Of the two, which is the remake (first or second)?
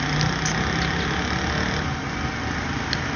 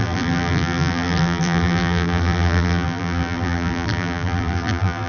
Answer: second